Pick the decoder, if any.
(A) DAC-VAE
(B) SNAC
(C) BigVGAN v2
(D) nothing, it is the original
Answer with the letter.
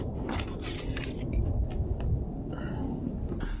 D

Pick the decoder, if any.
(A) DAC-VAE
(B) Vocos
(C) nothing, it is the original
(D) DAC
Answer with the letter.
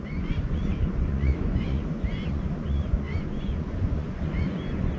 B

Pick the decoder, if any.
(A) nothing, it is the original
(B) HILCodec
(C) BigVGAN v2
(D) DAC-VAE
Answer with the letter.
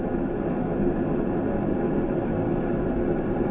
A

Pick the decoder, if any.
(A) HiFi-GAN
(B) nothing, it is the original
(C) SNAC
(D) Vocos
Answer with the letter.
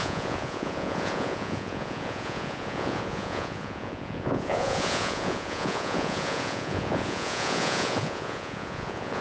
D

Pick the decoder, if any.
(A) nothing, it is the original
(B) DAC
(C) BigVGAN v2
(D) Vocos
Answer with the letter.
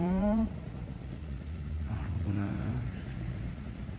D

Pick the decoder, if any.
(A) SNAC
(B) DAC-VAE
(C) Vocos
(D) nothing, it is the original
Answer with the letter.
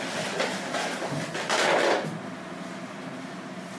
D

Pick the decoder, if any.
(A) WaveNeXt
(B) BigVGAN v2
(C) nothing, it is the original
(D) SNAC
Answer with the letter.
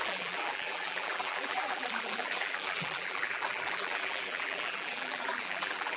B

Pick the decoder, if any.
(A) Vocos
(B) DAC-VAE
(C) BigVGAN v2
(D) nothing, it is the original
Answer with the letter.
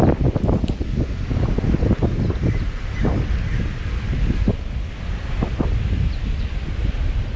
D